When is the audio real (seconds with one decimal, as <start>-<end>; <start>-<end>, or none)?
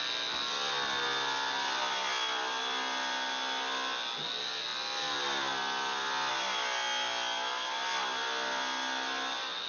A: 0.0-9.7